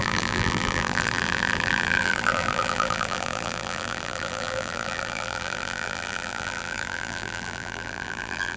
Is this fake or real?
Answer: fake